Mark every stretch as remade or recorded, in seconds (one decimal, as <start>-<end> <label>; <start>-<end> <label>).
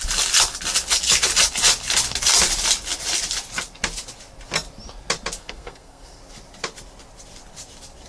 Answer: 0.0-5.4 recorded; 5.4-6.2 remade; 6.2-8.1 recorded